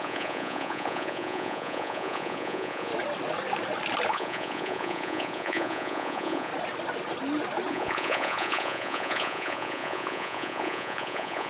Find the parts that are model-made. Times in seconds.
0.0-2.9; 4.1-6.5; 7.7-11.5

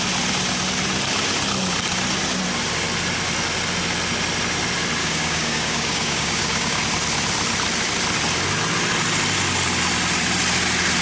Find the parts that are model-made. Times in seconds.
5.0-6.8

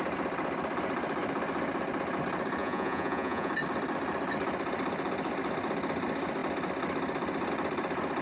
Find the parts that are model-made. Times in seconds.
2.6-3.5

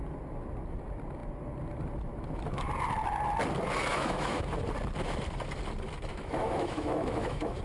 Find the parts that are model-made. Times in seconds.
3.9-4.5; 6.1-7.6

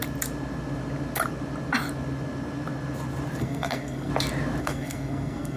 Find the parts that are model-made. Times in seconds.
3.4-4.1; 4.6-5.6

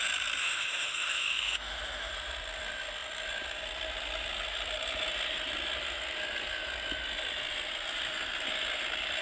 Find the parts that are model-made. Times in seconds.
0.4-2.1

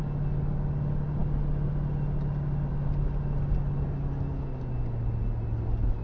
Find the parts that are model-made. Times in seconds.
none

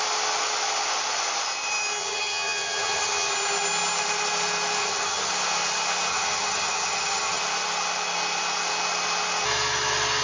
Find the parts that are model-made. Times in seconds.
2.0-3.3; 4.8-5.3; 6.1-7.4